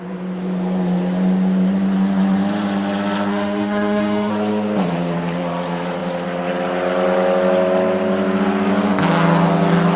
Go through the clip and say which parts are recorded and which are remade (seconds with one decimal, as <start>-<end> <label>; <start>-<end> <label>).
0.0-3.3 recorded; 3.3-4.3 remade; 4.3-10.0 recorded